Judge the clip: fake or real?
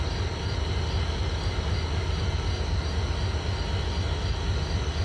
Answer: real